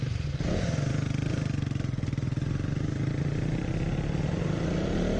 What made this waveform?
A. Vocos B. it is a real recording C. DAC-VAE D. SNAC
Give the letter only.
B